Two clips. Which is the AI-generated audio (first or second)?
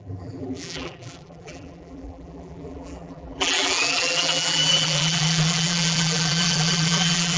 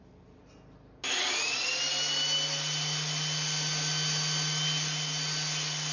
first